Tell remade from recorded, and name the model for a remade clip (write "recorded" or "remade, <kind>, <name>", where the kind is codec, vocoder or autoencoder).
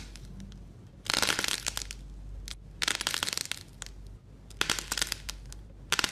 recorded